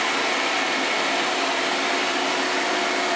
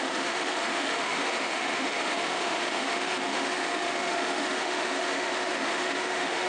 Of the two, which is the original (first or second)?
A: first